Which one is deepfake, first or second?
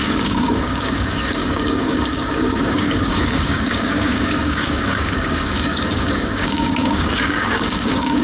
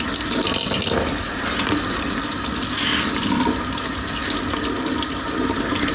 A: first